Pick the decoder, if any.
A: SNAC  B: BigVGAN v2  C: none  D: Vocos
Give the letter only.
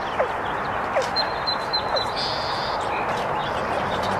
C